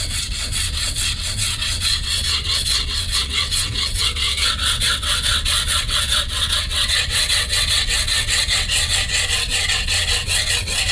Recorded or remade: remade